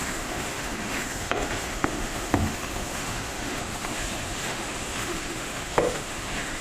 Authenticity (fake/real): fake